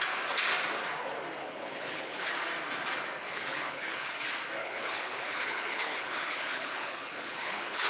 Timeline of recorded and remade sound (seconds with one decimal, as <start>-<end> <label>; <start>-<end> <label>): 0.0-1.4 recorded; 1.4-2.3 remade; 2.3-3.2 recorded; 3.2-4.1 remade; 4.1-4.6 recorded; 4.6-7.9 remade